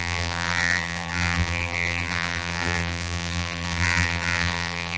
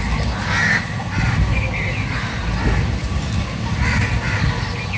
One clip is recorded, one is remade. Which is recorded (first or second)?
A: second